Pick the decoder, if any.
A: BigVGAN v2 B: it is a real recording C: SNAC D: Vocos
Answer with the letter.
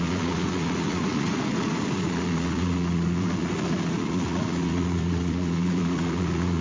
D